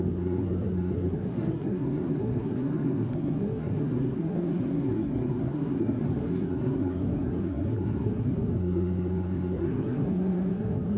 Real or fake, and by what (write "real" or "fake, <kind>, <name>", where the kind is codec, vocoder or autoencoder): fake, codec, SNAC